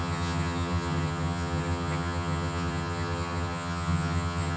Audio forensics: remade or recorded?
remade